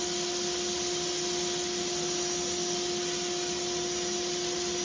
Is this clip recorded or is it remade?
recorded